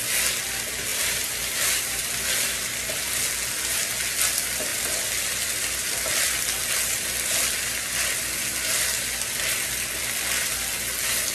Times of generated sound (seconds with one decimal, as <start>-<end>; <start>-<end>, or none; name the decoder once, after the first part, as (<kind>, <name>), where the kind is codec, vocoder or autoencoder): 0.9-2.0 (vocoder, BigVGAN v2); 4.7-6.4